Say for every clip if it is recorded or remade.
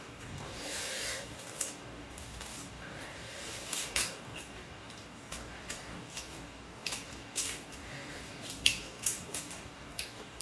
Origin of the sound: remade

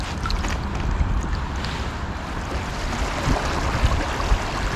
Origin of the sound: recorded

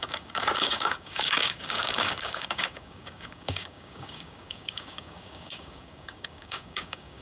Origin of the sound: remade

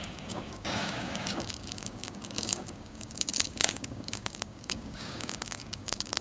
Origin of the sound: remade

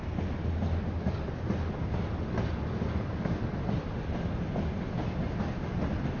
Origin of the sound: recorded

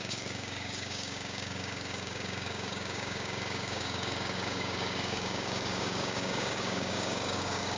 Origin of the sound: remade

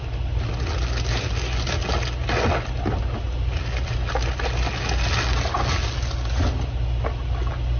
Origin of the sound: recorded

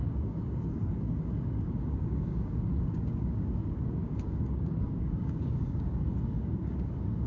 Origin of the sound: remade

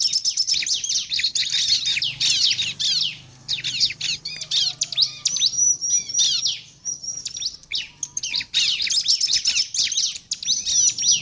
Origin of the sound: recorded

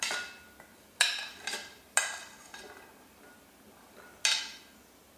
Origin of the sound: recorded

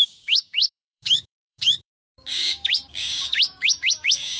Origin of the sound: remade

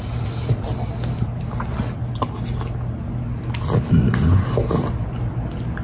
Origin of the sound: recorded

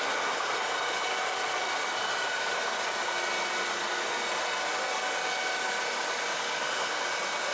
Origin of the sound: recorded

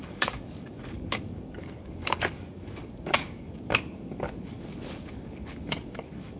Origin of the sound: remade